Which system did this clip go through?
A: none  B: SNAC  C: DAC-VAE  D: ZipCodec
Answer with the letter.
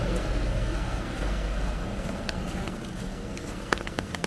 B